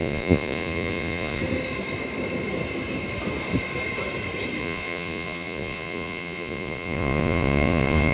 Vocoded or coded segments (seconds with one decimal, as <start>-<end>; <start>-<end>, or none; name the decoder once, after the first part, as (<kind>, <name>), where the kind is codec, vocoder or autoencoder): 0.0-1.4 (vocoder, Vocos); 4.6-8.1